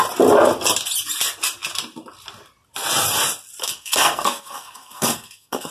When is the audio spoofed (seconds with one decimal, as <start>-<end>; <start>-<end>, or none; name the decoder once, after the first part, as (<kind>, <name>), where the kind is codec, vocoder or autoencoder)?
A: 3.6-5.7 (codec, SNAC)